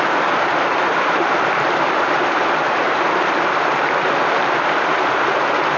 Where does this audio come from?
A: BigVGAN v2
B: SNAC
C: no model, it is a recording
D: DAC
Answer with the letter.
A